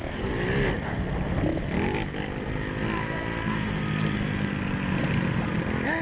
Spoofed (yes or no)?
no